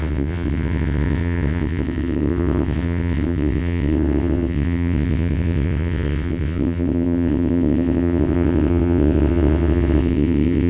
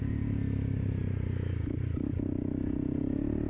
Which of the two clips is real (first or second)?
second